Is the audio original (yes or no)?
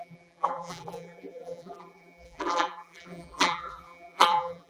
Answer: no